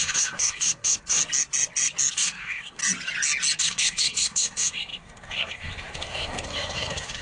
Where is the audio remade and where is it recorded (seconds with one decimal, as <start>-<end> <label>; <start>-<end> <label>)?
0.0-1.2 remade; 1.2-2.1 recorded; 2.1-2.8 remade; 2.8-3.6 recorded; 3.6-7.2 remade